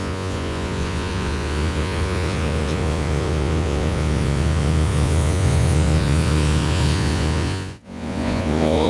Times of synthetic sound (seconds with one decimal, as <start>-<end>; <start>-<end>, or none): 0.0-8.9